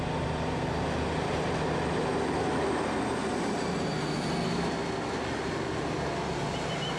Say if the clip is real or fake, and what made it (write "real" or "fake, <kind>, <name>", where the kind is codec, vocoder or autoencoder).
real